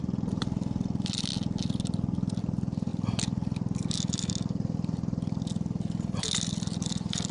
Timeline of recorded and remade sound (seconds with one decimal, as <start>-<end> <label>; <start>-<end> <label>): 0.0-7.3 recorded